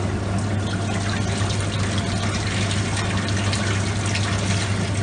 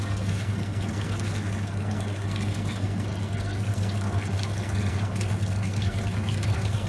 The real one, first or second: first